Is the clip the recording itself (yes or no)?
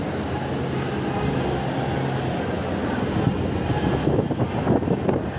yes